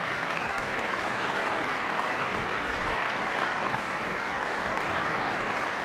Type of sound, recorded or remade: remade